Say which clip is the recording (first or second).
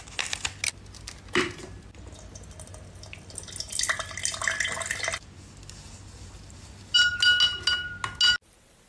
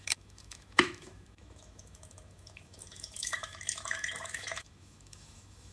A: first